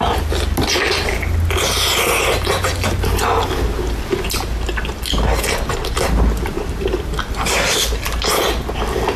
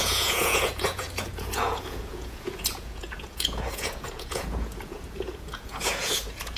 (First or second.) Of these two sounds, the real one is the first